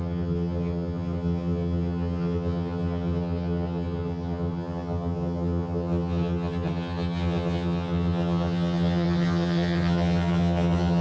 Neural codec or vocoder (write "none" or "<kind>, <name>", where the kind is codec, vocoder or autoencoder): vocoder, HiFi-GAN